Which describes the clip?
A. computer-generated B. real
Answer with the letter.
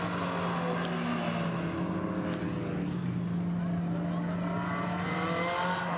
B